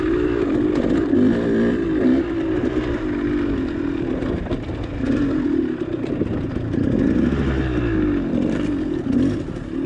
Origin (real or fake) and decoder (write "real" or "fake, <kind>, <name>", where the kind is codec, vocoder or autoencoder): real